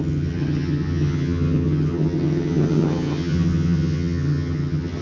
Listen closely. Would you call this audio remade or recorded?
remade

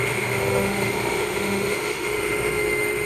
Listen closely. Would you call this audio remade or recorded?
remade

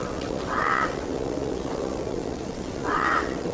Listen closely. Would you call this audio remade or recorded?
remade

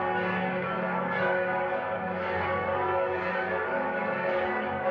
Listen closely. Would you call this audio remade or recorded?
remade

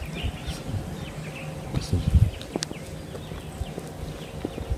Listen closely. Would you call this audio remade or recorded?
recorded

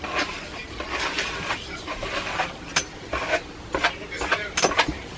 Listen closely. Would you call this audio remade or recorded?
remade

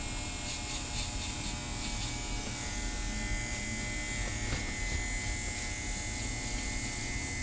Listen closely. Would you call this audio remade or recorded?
recorded